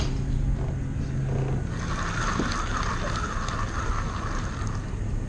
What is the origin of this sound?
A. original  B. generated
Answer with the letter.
A